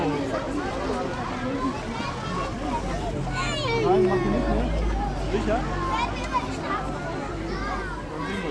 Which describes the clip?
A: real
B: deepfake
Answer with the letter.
A